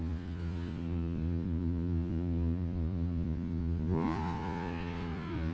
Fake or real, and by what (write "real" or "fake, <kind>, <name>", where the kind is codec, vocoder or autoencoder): fake, vocoder, Vocos